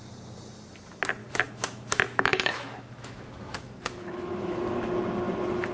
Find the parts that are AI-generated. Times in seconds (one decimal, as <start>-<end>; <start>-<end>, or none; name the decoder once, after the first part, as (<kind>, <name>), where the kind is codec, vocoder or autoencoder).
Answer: 1.2-4.6 (autoencoder, DAC-VAE)